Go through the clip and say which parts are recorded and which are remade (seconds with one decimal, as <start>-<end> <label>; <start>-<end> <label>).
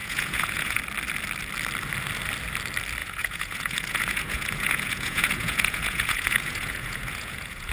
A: 0.0-0.8 remade; 0.8-3.0 recorded; 3.0-7.7 remade